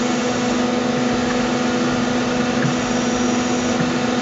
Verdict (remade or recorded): recorded